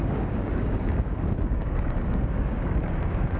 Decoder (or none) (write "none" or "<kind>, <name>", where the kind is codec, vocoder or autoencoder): codec, DAC